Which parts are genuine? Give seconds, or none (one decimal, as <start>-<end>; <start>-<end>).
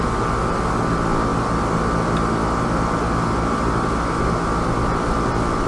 0.0-5.7